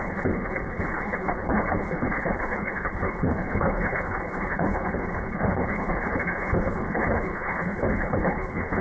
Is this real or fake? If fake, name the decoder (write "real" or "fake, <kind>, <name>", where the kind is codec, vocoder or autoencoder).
fake, codec, HILCodec